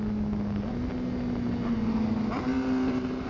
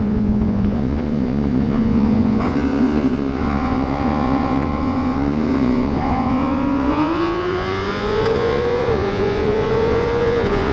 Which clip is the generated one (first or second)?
second